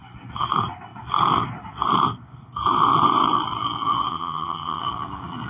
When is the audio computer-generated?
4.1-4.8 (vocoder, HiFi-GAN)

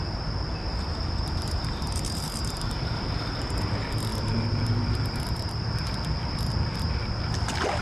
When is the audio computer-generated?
0.7-3.2 (vocoder, BigVGAN v2); 4.1-5.5

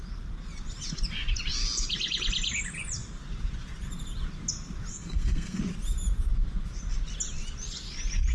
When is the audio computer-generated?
4.9-5.6 (codec, SNAC)

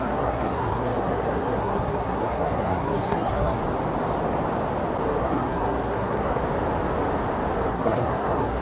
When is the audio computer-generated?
0.0-3.6 (codec, SNAC); 5.2-6.4; 7.7-8.6

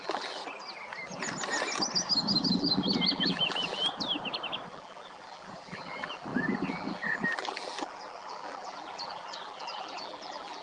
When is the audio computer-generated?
0.0-0.4 (vocoder, BigVGAN v2); 2.4-3.8; 4.7-10.6

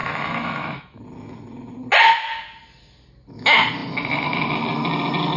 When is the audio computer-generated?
0.0-1.0 (autoencoder, DAC-VAE)